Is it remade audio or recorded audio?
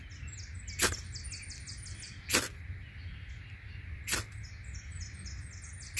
recorded